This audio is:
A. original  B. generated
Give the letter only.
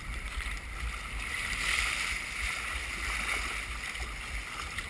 A